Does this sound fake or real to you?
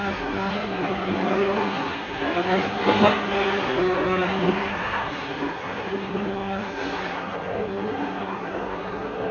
fake